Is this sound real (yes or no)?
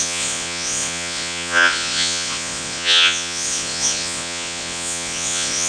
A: no